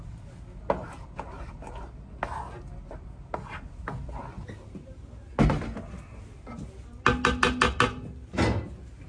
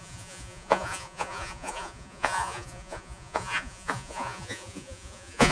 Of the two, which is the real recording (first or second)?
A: first